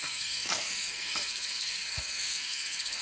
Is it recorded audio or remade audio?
remade